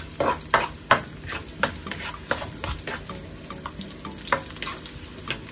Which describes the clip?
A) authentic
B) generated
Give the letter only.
A